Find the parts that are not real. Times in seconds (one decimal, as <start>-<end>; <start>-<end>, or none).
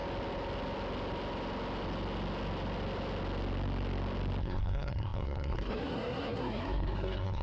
4.4-7.4